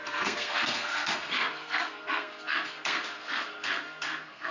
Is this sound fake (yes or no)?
yes